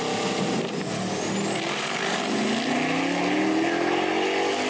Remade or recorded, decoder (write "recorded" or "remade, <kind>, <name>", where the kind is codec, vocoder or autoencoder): recorded